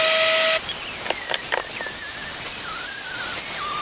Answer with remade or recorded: recorded